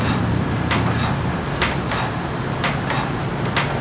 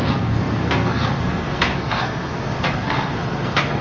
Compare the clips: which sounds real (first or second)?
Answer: first